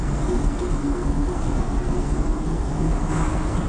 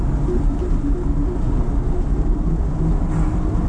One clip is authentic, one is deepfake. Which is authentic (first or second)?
second